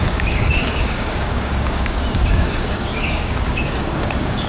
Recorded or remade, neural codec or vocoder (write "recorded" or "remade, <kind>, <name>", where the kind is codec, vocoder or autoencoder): remade, codec, DAC